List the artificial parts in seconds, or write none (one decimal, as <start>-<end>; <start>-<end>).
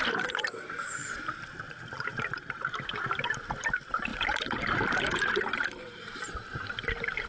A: 0.0-7.3